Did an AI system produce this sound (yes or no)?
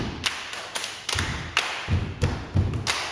no